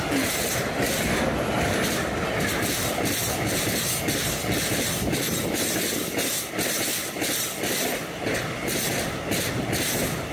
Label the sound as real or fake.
real